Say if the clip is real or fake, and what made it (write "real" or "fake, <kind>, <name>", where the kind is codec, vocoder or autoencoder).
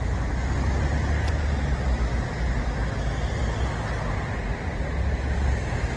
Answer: real